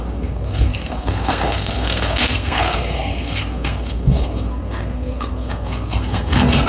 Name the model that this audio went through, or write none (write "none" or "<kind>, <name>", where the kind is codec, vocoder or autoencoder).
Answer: codec, SNAC